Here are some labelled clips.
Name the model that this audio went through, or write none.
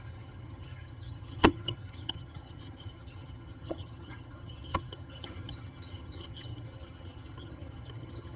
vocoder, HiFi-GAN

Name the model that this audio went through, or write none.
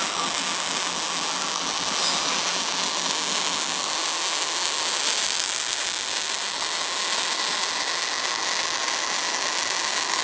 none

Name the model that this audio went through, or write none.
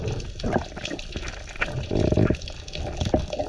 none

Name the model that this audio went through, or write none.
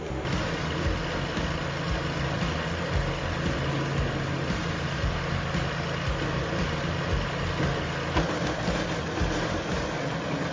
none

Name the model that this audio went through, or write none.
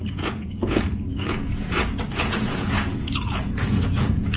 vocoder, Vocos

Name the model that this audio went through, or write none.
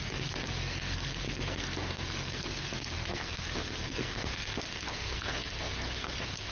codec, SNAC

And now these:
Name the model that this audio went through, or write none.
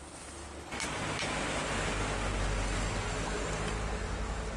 none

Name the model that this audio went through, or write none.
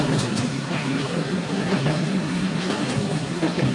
codec, SNAC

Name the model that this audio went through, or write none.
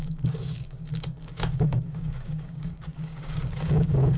codec, DAC